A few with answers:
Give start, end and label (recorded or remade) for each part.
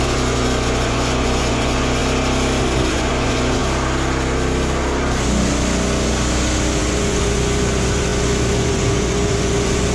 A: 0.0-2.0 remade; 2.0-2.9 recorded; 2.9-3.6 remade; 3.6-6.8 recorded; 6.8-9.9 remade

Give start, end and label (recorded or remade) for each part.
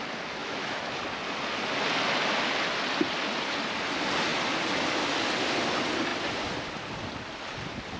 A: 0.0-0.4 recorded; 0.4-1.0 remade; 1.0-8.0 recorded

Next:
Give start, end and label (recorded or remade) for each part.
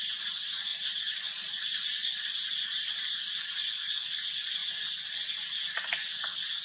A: 0.0-0.7 recorded; 0.7-3.9 remade; 3.9-4.6 recorded; 4.6-5.1 remade; 5.1-6.6 recorded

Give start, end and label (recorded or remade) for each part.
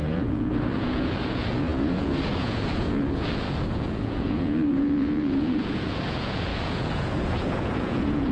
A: 0.0-8.3 remade